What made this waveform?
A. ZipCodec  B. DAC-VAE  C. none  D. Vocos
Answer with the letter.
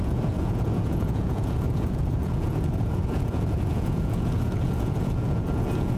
D